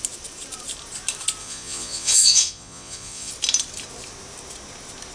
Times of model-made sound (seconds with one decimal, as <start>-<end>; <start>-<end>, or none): 1.4-3.3